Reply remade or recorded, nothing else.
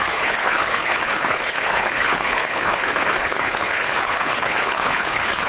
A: remade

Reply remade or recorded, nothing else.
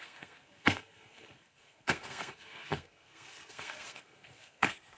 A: remade